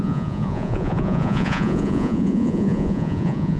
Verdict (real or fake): fake